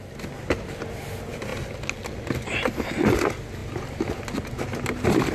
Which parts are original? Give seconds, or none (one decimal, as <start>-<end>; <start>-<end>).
0.0-5.3